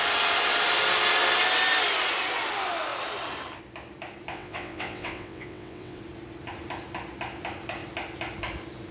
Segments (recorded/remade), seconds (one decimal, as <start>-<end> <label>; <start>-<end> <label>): 0.0-4.3 recorded; 4.3-6.0 remade; 6.0-8.9 recorded